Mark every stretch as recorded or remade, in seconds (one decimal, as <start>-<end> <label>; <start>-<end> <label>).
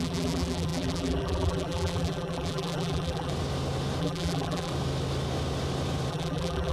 0.0-3.3 remade; 3.3-4.0 recorded; 4.0-4.7 remade; 4.7-6.1 recorded; 6.1-6.7 remade